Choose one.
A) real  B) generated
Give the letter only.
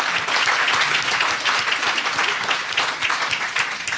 A